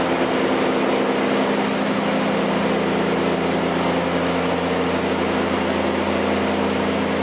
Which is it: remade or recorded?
recorded